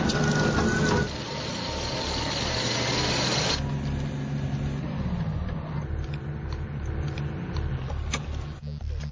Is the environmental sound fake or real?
real